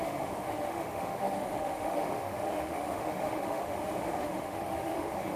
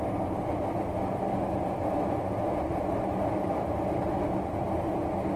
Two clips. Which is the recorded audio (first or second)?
second